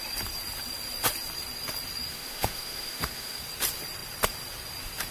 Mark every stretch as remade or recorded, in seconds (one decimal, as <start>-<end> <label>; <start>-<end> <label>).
0.0-2.1 recorded; 2.1-3.4 remade; 3.4-5.1 recorded